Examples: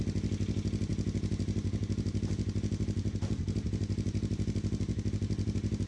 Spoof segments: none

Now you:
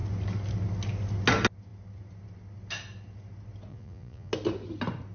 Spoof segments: 3.7-4.3

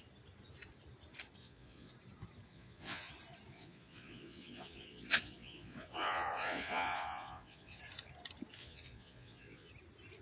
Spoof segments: 1.4-1.9; 2.5-3.1; 3.5-7.8; 8.6-9.7

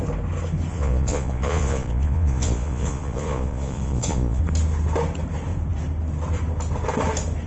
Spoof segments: 0.7-4.4

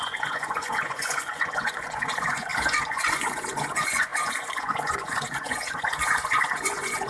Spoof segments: 0.0-7.1